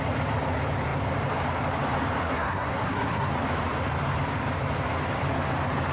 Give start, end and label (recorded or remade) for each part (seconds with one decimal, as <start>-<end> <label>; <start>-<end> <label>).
0.0-2.2 recorded; 2.2-3.3 remade; 3.3-5.9 recorded